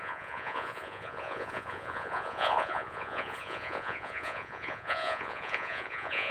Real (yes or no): no